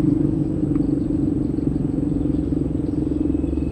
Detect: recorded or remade recorded